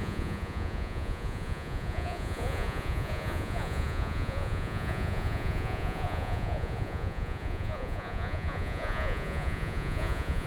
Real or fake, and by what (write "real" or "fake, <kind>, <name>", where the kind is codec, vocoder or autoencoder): fake, vocoder, Vocos